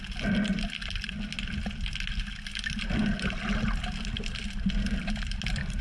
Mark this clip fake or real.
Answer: real